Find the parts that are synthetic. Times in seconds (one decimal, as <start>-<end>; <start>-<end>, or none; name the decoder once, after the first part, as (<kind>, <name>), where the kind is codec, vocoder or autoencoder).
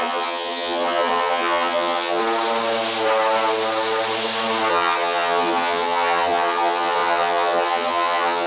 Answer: 0.0-2.2 (vocoder, HiFi-GAN); 4.7-8.5